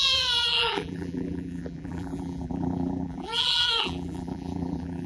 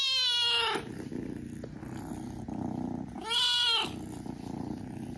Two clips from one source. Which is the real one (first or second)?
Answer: second